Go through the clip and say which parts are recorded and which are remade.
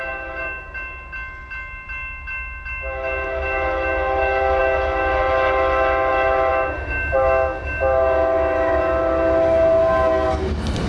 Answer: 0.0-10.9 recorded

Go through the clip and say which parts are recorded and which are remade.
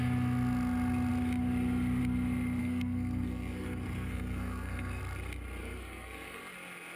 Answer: 0.0-2.6 recorded; 2.6-5.0 remade; 5.0-5.6 recorded; 5.6-6.4 remade; 6.4-7.0 recorded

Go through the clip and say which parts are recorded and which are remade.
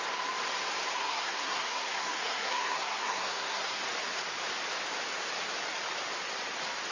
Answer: 0.0-0.9 recorded; 0.9-3.8 remade; 3.8-6.9 recorded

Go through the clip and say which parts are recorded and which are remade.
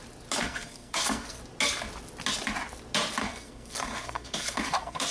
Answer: 0.0-0.4 recorded; 0.4-1.4 remade; 1.4-3.2 recorded; 3.2-5.1 remade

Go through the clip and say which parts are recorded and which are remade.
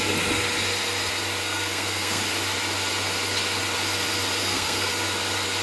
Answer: 0.0-1.4 recorded; 1.4-2.2 remade; 2.2-4.4 recorded; 4.4-4.9 remade; 4.9-5.6 recorded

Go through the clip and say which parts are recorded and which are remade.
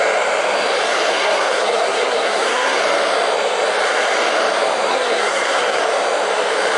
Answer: 0.0-1.1 recorded; 1.1-2.8 remade; 2.8-4.9 recorded; 4.9-5.8 remade; 5.8-6.8 recorded